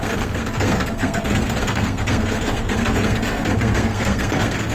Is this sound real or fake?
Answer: fake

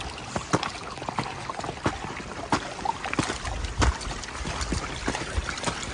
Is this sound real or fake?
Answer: real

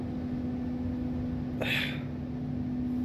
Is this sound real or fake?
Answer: real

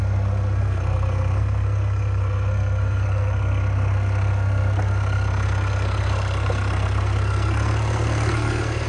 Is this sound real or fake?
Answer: fake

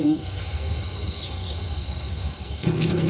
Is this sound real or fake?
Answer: fake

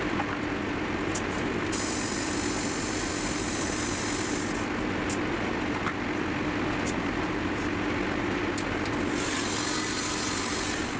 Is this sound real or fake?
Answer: real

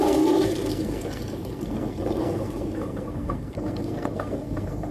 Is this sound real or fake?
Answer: fake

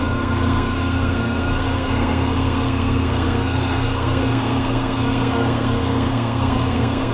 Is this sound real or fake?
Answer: fake